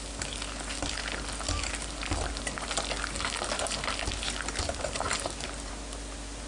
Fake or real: real